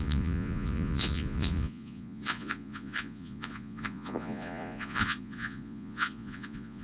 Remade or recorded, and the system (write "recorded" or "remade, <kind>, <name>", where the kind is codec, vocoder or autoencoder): remade, vocoder, Vocos